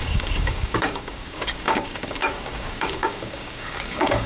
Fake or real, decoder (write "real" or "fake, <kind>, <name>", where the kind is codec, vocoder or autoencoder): fake, codec, DAC